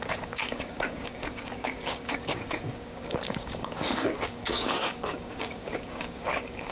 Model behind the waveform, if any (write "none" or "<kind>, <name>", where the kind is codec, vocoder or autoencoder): codec, DAC